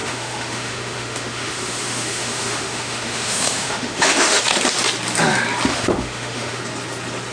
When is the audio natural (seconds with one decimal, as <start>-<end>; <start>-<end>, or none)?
4.4-5.7; 6.6-7.3